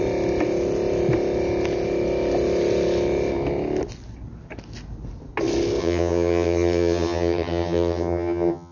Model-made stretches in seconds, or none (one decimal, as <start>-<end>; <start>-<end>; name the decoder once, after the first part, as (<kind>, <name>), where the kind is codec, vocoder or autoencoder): 5.8-8.7 (vocoder, HiFi-GAN)